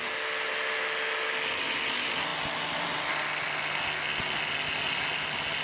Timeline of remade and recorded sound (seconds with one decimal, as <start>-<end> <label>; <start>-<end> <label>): 0.0-5.6 recorded